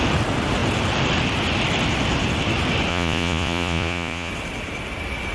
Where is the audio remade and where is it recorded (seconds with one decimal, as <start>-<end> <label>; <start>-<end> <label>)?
0.0-2.9 recorded; 2.9-4.3 remade; 4.3-5.3 recorded